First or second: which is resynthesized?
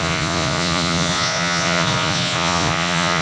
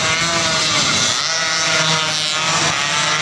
first